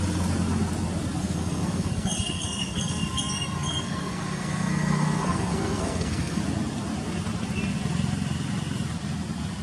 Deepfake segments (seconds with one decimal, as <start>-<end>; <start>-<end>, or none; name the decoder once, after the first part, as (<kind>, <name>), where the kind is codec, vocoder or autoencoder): 1.2-6.4 (codec, SNAC)